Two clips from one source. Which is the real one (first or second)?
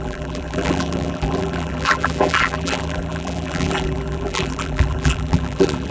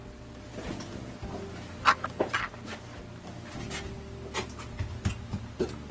second